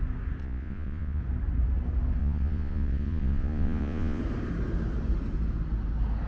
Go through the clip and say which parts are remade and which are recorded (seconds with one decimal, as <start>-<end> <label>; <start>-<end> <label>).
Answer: 0.0-0.4 recorded; 0.4-1.2 remade; 1.2-2.2 recorded; 2.2-4.2 remade; 4.2-6.3 recorded